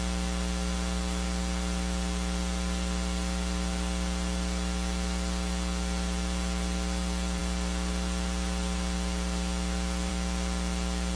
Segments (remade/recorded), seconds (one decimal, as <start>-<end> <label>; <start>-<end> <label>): 0.0-11.2 recorded